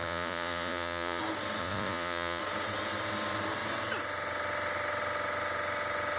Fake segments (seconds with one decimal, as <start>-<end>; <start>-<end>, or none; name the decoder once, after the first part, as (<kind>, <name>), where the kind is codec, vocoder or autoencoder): 0.0-1.2 (vocoder, Vocos); 1.6-2.4